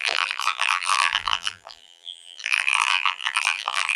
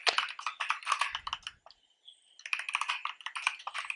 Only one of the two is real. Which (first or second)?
second